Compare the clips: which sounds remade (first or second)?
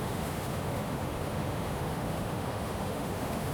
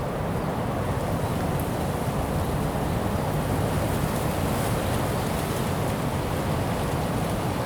first